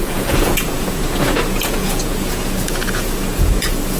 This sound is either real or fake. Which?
fake